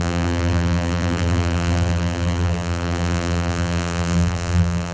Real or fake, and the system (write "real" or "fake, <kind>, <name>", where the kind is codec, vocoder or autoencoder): fake, vocoder, BigVGAN v2